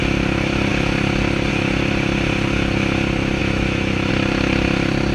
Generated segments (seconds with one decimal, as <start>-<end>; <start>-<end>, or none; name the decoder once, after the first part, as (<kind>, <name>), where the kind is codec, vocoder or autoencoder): 3.4-4.1 (autoencoder, DAC-VAE)